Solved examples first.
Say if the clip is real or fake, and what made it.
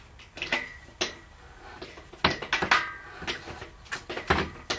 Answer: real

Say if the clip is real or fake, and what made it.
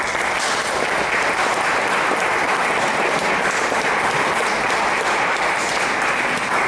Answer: real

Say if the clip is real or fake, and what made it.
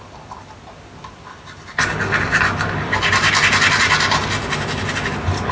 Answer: real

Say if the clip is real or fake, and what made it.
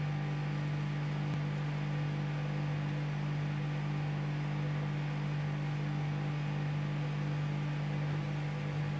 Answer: real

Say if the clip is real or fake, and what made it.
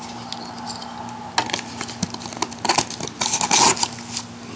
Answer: real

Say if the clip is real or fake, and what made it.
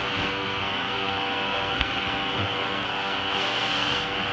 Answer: fake, codec, SNAC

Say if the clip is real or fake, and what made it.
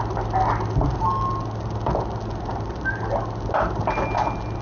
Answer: real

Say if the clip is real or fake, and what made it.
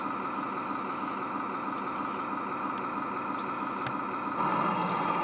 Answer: real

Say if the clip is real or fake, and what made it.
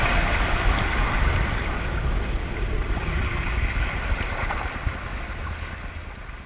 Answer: real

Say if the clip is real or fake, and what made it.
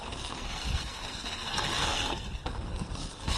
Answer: fake, codec, SNAC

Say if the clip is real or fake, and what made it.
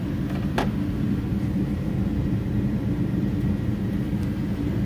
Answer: real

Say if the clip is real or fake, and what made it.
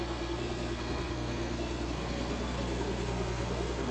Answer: fake, codec, SNAC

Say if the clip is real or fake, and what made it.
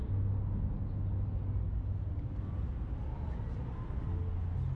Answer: real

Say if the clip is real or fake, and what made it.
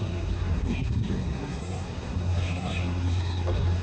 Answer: fake, codec, SNAC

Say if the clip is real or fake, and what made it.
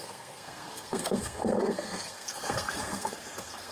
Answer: fake, codec, SNAC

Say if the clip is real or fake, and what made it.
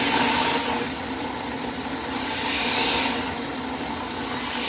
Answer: real